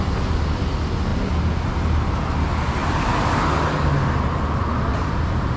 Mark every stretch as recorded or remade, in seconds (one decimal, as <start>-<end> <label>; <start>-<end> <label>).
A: 0.0-2.8 recorded; 2.8-3.3 remade; 3.3-4.9 recorded; 4.9-5.6 remade